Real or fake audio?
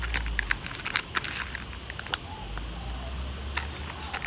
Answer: real